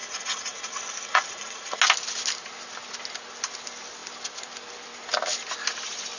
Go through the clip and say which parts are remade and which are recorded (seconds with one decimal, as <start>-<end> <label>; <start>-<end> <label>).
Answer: 0.0-1.8 remade; 1.8-6.2 recorded